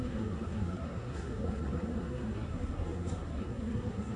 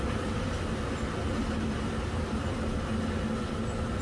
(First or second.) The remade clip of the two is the first